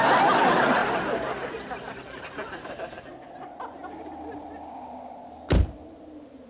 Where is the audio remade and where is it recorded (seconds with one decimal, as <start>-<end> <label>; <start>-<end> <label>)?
0.0-6.5 recorded